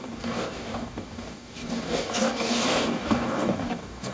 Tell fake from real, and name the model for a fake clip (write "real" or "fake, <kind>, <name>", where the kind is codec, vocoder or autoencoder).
fake, codec, DAC